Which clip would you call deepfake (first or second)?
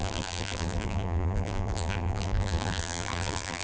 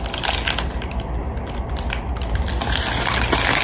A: first